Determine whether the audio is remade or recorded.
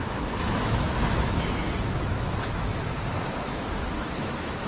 remade